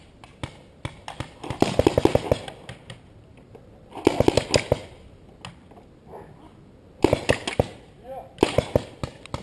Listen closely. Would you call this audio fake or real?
real